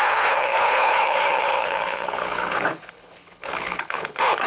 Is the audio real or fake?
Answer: fake